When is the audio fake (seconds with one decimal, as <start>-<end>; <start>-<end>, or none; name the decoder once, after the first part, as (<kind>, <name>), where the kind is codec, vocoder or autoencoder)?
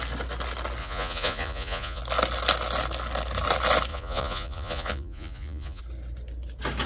0.8-2.0 (vocoder, Vocos); 3.9-5.8